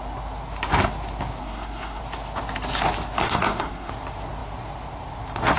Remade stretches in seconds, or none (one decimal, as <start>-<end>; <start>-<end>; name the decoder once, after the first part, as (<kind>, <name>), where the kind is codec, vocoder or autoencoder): 1.4-2.0 (codec, SNAC); 3.2-3.9